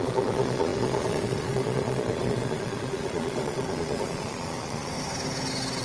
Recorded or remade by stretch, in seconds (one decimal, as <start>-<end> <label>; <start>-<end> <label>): 0.0-4.9 remade; 4.9-5.8 recorded